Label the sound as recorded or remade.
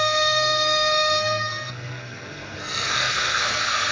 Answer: remade